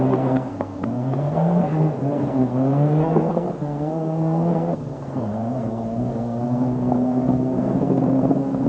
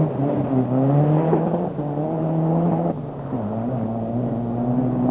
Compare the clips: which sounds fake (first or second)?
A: first